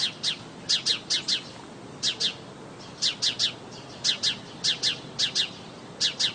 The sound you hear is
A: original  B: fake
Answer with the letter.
A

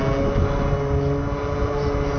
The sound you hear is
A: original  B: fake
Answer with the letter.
A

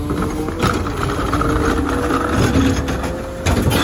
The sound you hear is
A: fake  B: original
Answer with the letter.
B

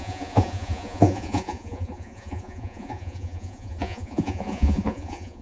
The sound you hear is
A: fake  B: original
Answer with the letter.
A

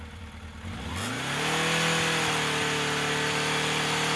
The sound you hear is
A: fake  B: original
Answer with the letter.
B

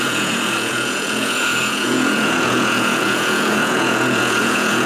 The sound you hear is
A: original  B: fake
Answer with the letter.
B